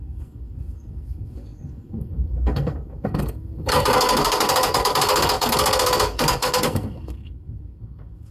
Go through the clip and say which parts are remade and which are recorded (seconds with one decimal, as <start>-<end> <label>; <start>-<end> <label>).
0.0-8.3 remade